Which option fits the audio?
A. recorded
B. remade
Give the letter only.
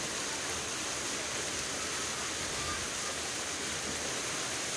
B